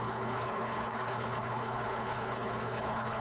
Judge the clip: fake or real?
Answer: fake